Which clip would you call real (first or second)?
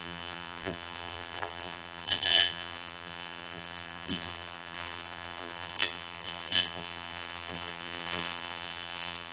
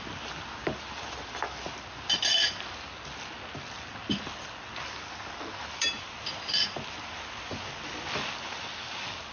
second